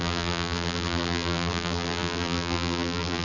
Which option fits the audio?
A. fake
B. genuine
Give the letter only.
A